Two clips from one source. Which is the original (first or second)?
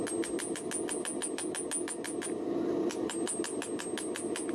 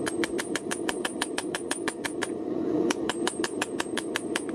first